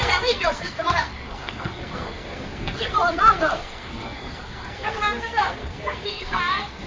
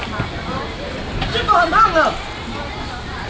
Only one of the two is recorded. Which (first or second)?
second